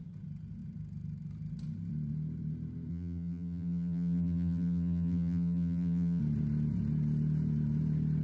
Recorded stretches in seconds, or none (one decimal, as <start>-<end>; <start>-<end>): 0.0-2.9; 6.2-8.2